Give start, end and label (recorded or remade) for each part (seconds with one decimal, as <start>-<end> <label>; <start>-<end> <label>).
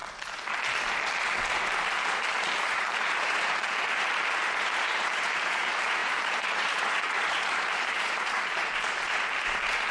0.0-2.4 recorded; 2.4-9.9 remade